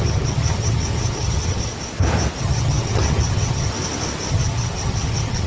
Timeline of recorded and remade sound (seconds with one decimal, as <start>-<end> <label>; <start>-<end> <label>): 0.0-1.7 remade; 1.7-2.4 recorded; 2.4-3.7 remade; 3.7-4.3 recorded; 4.3-5.5 remade

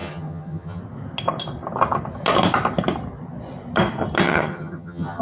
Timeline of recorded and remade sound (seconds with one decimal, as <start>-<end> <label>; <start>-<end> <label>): 0.0-0.8 remade; 0.8-4.2 recorded; 4.2-5.2 remade

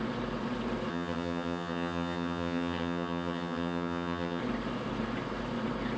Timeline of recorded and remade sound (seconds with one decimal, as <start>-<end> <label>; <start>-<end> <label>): 0.0-0.9 recorded; 0.9-4.4 remade; 4.4-6.0 recorded